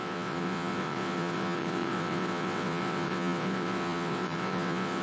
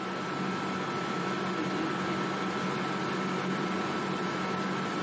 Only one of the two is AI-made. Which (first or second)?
first